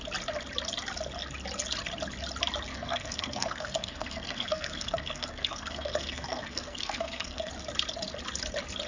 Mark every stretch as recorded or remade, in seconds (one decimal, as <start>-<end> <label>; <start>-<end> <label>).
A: 0.0-2.7 recorded; 2.7-7.5 remade; 7.5-8.9 recorded